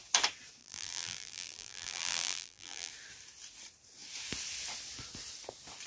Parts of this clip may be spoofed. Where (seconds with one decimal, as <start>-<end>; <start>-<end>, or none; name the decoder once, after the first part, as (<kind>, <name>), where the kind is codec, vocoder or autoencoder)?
0.6-2.9 (vocoder, BigVGAN v2)